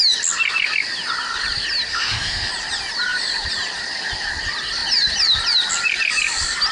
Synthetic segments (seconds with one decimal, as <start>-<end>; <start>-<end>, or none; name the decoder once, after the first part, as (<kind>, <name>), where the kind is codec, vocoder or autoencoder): 1.9-2.5 (autoencoder, DAC-VAE)